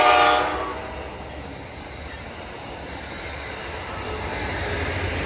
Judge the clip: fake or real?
real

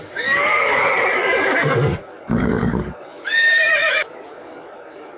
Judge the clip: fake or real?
fake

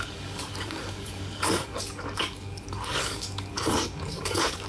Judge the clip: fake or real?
fake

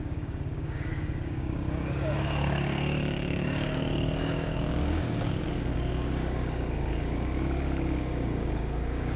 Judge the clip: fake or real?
fake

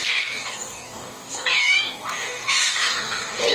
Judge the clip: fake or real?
fake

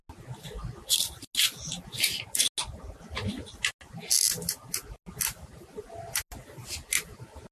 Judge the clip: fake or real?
real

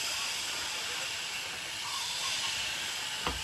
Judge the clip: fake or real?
real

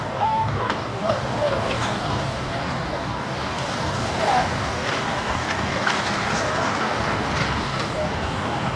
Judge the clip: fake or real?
fake